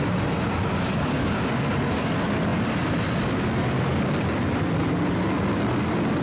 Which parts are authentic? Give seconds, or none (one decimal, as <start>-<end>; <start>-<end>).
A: 0.0-0.7; 1.5-6.2